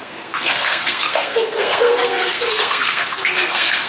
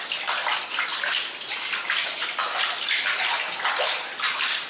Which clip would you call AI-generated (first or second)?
first